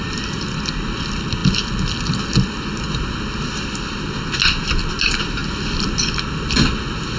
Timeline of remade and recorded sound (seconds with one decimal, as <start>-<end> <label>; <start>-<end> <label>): 0.0-7.2 recorded